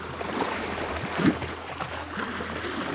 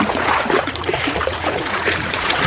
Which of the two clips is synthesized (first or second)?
second